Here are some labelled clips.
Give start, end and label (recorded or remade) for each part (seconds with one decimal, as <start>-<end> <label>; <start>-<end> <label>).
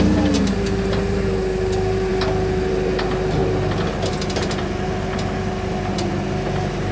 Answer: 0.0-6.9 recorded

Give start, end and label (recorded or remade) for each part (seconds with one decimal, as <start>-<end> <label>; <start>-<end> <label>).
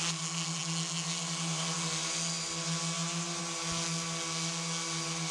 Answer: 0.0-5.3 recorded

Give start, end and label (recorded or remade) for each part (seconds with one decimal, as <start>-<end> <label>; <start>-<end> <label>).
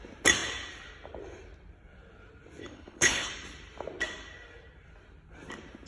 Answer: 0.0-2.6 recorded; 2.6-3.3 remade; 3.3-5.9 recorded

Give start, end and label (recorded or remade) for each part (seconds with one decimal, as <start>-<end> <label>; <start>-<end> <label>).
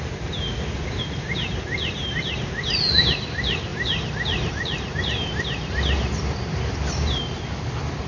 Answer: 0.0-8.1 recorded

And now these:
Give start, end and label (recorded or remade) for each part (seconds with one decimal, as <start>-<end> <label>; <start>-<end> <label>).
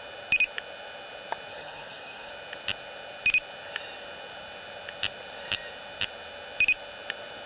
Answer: 0.0-1.5 recorded; 1.5-2.3 remade; 2.3-7.5 recorded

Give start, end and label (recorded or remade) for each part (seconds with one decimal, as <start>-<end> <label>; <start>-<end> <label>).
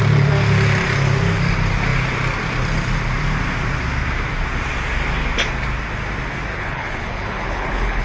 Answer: 0.0-6.5 recorded; 6.5-8.0 remade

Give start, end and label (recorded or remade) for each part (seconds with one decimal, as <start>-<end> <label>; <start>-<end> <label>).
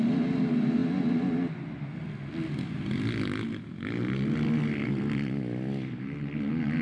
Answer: 0.0-6.8 recorded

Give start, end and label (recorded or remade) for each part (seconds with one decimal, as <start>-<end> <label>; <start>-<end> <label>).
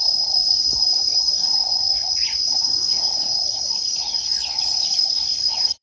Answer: 0.0-5.8 remade